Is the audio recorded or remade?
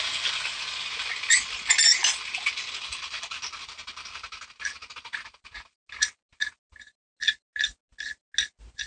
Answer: recorded